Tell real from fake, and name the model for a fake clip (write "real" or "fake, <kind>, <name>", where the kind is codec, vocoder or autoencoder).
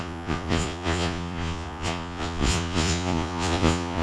fake, vocoder, Vocos